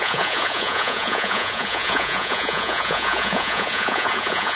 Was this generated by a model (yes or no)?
yes